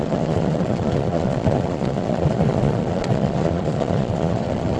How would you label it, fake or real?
fake